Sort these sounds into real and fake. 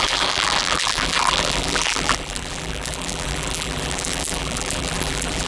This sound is fake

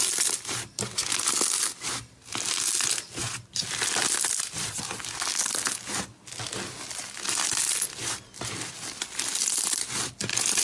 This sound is real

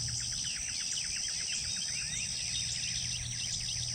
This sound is real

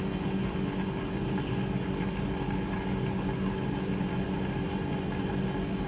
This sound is real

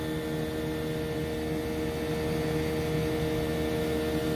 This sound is real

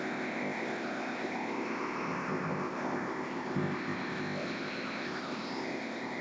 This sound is fake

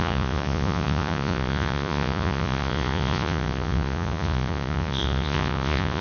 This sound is fake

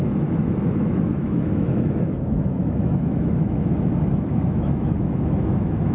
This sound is fake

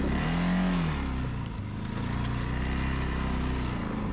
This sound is real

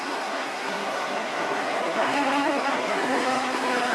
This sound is fake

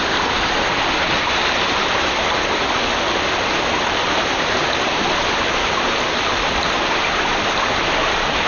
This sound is real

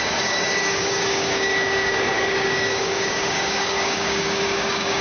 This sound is fake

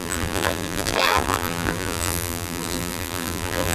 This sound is fake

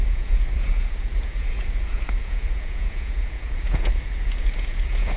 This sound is fake